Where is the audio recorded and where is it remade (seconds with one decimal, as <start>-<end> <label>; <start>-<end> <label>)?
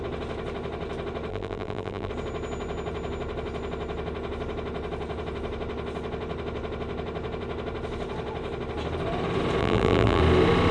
0.0-1.3 recorded; 1.3-2.1 remade; 2.1-9.6 recorded; 9.6-10.2 remade; 10.2-10.7 recorded